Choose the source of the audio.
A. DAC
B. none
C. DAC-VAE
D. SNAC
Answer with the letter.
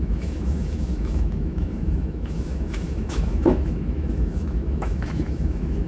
C